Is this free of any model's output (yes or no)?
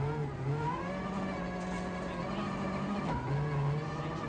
yes